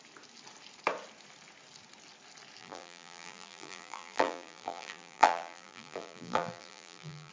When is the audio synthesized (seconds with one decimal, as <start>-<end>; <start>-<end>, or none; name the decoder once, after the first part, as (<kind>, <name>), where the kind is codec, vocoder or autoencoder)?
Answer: 2.6-7.3 (vocoder, BigVGAN v2)